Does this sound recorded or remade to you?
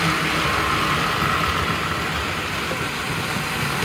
recorded